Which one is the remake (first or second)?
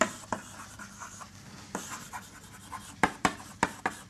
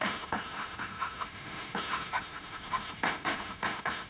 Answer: second